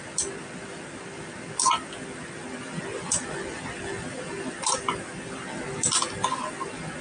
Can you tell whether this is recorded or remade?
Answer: recorded